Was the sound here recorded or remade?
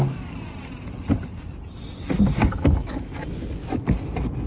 recorded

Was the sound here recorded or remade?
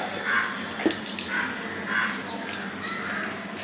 recorded